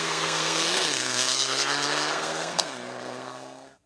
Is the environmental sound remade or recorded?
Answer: remade